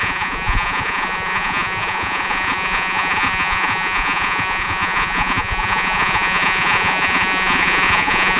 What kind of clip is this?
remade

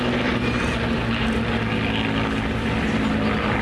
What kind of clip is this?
recorded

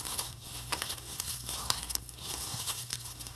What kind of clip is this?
remade